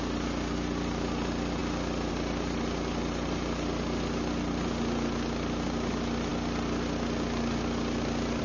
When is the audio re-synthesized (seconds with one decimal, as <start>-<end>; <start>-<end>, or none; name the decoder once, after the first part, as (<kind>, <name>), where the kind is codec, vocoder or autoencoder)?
none